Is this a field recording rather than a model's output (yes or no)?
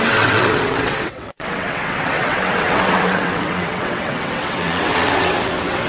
no